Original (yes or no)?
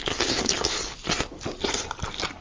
yes